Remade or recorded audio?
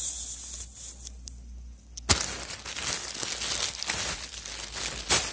recorded